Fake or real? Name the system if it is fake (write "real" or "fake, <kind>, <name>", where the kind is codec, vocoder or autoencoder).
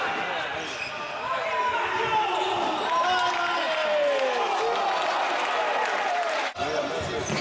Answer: real